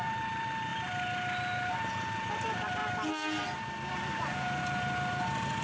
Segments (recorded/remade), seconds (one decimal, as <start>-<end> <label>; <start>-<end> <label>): 0.0-0.7 remade; 0.7-1.7 recorded; 1.7-2.8 remade; 2.8-3.9 recorded; 3.9-4.6 remade; 4.6-5.6 recorded